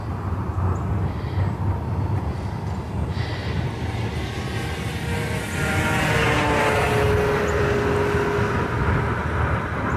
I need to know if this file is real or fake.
real